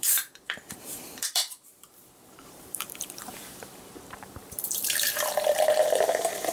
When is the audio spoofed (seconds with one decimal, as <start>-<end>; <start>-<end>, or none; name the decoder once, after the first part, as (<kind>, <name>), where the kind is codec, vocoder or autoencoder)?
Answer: 0.0-6.5 (vocoder, BigVGAN v2)

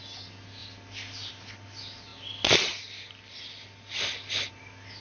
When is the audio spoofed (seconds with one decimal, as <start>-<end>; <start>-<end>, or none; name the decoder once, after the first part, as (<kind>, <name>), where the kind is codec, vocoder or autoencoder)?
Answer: none

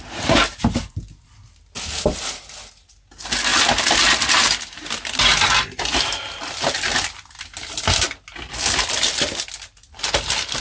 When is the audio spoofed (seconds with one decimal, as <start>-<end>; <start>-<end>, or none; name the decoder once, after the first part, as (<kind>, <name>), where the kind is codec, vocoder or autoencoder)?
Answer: none

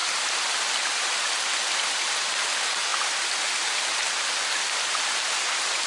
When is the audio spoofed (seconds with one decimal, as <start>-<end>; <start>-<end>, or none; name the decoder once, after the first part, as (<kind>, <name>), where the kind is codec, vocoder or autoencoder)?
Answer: none

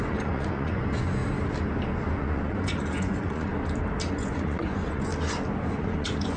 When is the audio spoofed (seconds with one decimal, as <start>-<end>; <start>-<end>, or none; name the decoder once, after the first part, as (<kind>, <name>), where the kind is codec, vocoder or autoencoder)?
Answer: 0.0-1.2 (vocoder, Vocos); 2.1-3.5; 4.1-5.1; 5.7-6.4